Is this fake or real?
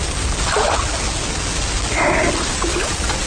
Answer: real